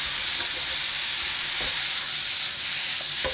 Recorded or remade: recorded